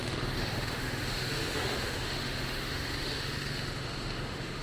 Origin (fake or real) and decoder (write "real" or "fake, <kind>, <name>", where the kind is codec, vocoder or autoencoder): fake, autoencoder, DAC-VAE